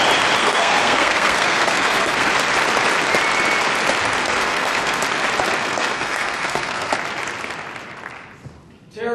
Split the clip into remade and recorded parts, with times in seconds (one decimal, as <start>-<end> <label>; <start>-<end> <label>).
0.0-0.4 recorded; 0.4-2.3 remade; 2.3-4.2 recorded; 4.2-5.0 remade; 5.0-5.6 recorded; 5.6-6.9 remade; 6.9-9.1 recorded